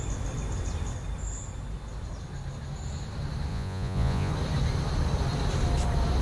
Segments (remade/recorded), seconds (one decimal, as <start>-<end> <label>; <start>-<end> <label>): 0.0-3.5 recorded; 3.5-4.3 remade; 4.3-6.2 recorded

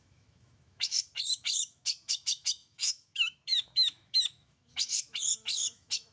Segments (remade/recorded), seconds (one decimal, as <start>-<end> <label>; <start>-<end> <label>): 0.0-6.1 remade

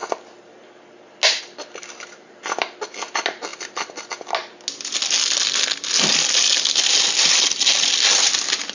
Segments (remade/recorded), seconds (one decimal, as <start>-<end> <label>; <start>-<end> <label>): 0.0-8.7 recorded